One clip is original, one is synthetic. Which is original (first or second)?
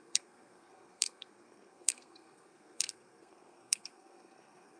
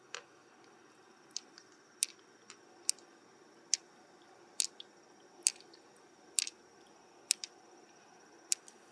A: second